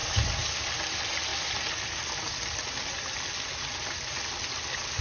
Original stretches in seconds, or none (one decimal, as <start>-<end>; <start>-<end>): 0.6-5.0